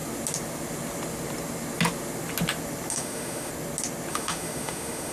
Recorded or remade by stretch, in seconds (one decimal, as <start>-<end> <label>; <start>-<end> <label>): 0.0-2.9 recorded; 2.9-3.5 remade; 3.5-4.1 recorded; 4.1-5.1 remade